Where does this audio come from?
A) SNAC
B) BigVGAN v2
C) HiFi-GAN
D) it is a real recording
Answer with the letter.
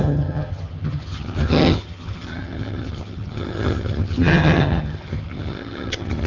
C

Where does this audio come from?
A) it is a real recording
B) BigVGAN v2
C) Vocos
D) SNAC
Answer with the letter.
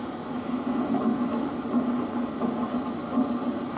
A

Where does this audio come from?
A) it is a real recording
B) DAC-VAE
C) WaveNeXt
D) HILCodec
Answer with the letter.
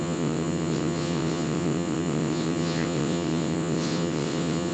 C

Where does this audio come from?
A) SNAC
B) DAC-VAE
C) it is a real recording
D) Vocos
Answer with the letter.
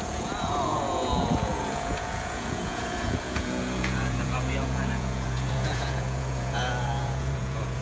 D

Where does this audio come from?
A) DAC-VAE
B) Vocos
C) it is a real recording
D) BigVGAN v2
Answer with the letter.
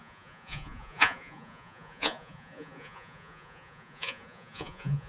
B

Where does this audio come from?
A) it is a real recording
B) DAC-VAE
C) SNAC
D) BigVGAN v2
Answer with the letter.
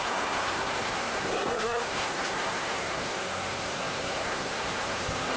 C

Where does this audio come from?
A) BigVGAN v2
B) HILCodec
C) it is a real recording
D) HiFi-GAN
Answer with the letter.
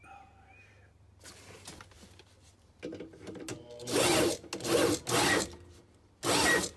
C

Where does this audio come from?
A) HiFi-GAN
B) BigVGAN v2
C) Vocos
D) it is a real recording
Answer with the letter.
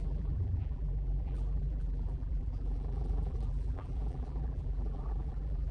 B